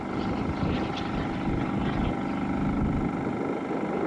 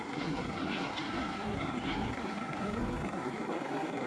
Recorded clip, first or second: first